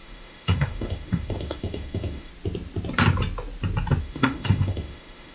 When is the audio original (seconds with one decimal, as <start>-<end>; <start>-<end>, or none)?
2.3-4.0